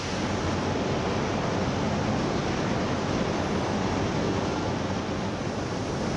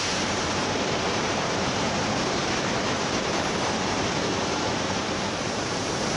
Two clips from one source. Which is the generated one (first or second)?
second